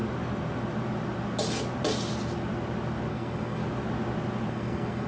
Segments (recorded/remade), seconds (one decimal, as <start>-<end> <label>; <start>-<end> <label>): 0.0-3.1 recorded; 3.1-3.6 remade; 3.6-4.5 recorded; 4.5-5.1 remade